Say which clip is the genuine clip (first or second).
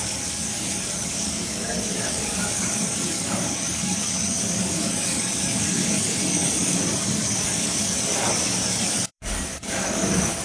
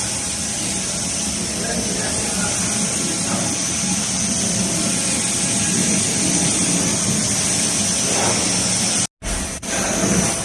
second